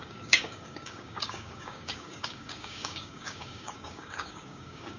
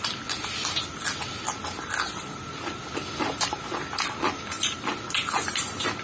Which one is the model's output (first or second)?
first